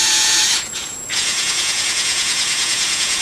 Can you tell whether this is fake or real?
fake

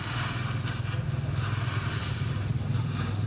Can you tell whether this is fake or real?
real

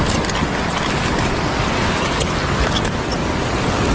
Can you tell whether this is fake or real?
real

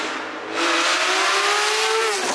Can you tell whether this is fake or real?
real